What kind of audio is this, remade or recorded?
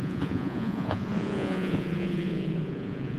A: remade